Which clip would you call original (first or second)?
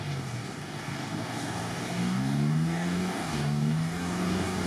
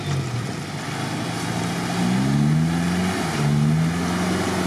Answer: second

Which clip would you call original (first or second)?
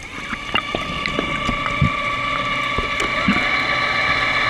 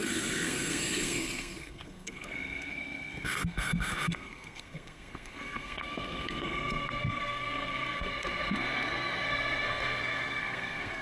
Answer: first